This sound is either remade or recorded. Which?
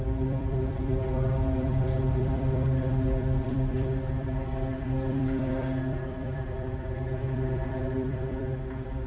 remade